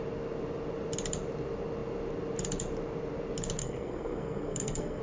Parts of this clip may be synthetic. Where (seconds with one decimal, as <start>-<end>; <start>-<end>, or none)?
3.6-5.0